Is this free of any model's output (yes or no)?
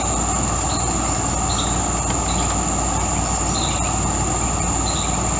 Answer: yes